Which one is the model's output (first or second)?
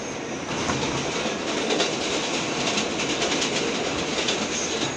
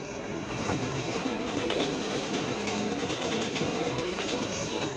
second